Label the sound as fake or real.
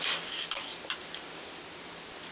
real